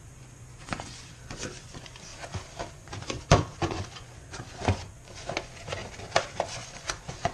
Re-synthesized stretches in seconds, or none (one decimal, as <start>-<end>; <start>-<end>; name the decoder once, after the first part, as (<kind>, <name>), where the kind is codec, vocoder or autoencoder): 0.0-2.1 (vocoder, Vocos); 2.7-5.8; 6.5-7.3